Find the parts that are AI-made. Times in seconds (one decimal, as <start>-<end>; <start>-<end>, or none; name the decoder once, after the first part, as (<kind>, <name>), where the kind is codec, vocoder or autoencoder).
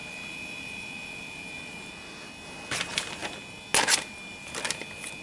0.0-1.9 (vocoder, BigVGAN v2)